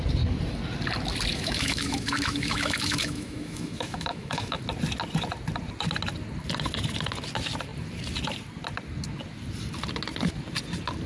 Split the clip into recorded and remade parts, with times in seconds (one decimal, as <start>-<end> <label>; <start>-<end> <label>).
0.0-1.3 recorded; 1.3-4.6 remade; 4.6-11.1 recorded